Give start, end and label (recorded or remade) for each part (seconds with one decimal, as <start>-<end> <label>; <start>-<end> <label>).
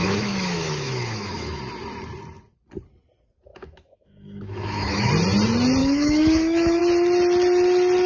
0.0-1.6 remade; 1.6-3.5 recorded; 3.5-5.1 remade; 5.1-5.8 recorded; 5.8-6.8 remade; 6.8-8.1 recorded